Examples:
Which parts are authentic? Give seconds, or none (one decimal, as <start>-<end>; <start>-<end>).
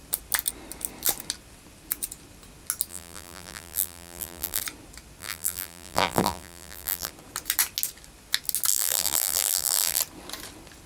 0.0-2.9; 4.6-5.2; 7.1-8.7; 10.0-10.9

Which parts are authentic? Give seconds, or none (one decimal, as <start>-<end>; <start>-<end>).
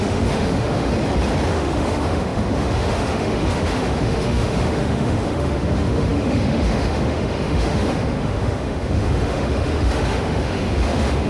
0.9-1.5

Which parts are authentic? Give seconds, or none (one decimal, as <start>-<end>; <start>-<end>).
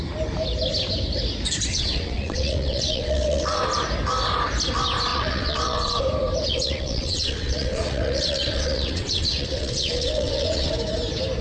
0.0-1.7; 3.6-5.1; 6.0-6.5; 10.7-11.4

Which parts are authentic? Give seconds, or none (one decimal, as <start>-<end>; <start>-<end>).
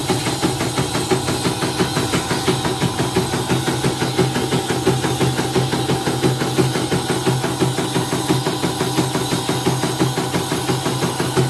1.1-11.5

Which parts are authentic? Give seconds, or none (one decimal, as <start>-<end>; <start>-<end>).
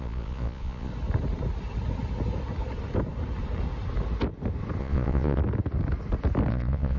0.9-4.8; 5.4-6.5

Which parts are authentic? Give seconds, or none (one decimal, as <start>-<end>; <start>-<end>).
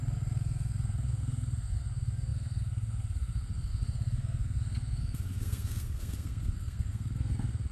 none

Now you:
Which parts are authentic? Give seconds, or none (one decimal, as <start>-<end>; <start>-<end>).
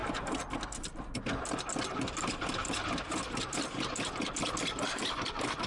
0.0-5.7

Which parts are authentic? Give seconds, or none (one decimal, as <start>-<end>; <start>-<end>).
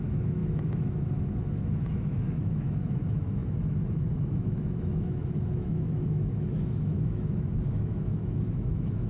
none